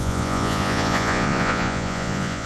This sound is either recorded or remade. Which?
remade